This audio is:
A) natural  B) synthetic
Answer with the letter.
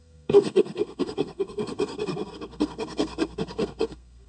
B